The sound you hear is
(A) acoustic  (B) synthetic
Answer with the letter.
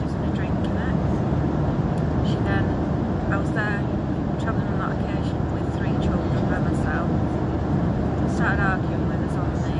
A